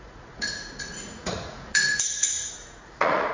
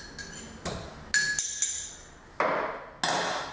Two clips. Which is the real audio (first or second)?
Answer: second